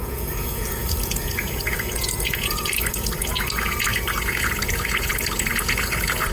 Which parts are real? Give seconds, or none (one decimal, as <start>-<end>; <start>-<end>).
none